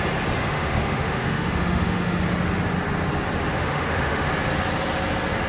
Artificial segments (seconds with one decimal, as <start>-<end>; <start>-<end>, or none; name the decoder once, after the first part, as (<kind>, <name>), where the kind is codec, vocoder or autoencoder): 0.4-2.2 (autoencoder, DAC-VAE); 3.5-4.3

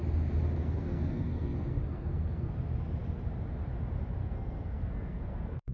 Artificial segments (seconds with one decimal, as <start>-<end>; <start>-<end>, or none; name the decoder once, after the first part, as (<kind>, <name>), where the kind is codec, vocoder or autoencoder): 0.6-2.5 (codec, SNAC); 4.2-5.7

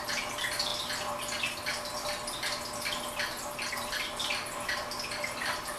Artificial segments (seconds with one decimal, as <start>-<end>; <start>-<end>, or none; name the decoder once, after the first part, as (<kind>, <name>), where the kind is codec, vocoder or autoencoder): none

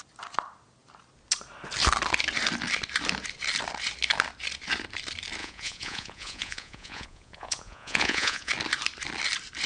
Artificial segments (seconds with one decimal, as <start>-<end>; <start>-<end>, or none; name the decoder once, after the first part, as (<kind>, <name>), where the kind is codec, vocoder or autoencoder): 5.4-8.5 (vocoder, Vocos)

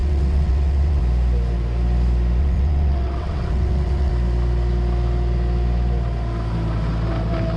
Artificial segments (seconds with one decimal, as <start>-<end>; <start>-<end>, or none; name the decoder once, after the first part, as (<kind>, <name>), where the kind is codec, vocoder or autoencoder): 0.0-1.0 (vocoder, WaveNeXt); 2.4-4.1

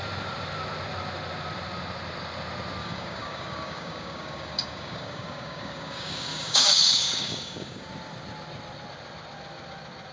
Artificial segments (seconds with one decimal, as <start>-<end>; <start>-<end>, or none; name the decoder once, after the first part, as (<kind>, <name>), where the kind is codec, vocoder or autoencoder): 2.8-7.9 (codec, DAC)

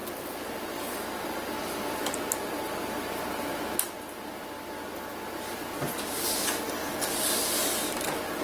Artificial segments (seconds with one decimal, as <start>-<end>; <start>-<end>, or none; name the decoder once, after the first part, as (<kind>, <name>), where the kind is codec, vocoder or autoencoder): 0.0-3.5 (vocoder, BigVGAN v2); 7.1-8.4

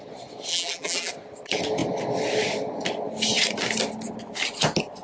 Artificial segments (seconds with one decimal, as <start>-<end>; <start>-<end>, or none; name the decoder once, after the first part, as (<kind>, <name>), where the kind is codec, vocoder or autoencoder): 0.5-1.1 (vocoder, BigVGAN v2)